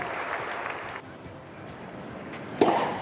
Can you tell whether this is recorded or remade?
recorded